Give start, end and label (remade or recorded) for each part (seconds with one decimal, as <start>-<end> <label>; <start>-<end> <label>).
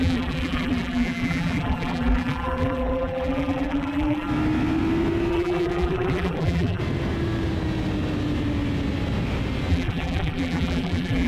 0.0-4.3 remade; 4.3-5.3 recorded; 5.3-6.8 remade; 6.8-9.7 recorded; 9.7-11.3 remade